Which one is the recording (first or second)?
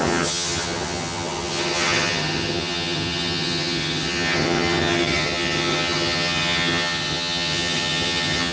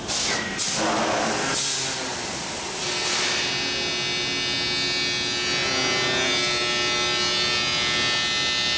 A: second